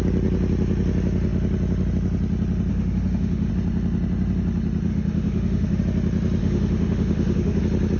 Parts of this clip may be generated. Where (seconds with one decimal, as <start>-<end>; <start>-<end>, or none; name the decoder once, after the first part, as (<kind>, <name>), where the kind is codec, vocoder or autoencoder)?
2.7-3.5 (autoencoder, DAC-VAE); 4.9-5.8; 6.4-7.6